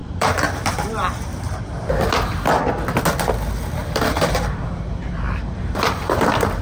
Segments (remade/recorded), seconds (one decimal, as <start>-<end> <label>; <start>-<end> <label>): 0.0-2.0 remade; 2.0-3.8 recorded; 3.8-4.6 remade; 4.6-5.4 recorded; 5.4-6.6 remade